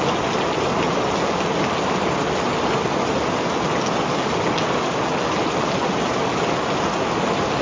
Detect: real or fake real